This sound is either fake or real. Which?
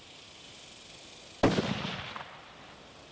fake